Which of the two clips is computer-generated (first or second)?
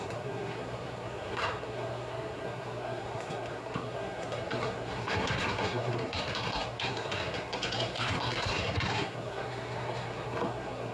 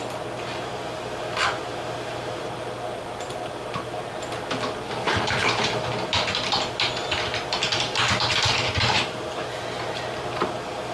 first